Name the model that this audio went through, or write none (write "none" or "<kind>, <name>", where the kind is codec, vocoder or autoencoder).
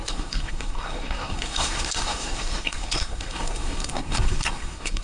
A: codec, SNAC